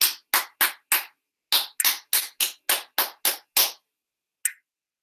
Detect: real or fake real